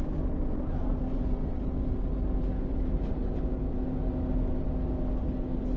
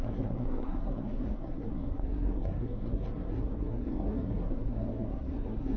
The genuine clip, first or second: first